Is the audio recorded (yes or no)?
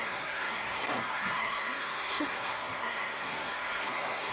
no